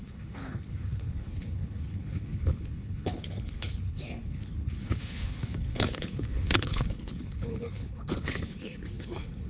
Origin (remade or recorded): remade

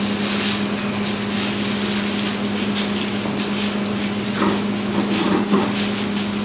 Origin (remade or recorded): recorded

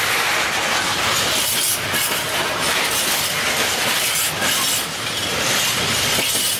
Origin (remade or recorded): recorded